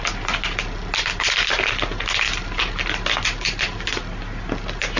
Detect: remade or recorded recorded